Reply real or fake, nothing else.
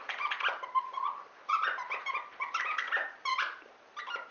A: real